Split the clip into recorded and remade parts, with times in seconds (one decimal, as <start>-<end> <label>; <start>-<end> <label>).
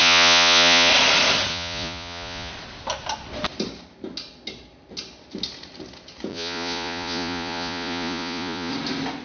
0.0-0.9 remade; 0.9-1.5 recorded; 1.5-2.5 remade; 2.5-6.3 recorded; 6.3-8.7 remade; 8.7-9.2 recorded